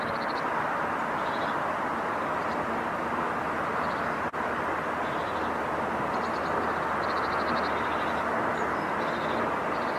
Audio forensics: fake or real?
real